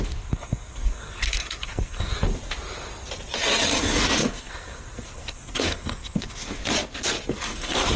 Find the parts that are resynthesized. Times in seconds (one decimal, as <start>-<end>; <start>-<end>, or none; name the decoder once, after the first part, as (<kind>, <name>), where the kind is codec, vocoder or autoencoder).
0.0-2.1 (codec, SNAC); 3.8-6.6; 7.3-8.0